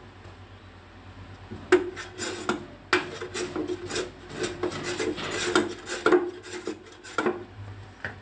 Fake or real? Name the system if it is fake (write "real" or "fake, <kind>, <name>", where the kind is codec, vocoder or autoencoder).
real